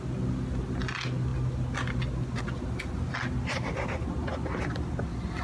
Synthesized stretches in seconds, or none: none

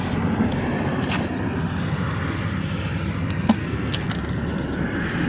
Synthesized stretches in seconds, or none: 3.6-4.1 (codec, SNAC)

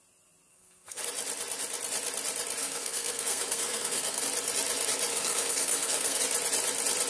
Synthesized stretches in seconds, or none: 0.5-1.0 (codec, SNAC); 2.6-4.2; 5.1-6.2